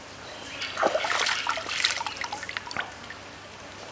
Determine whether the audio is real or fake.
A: real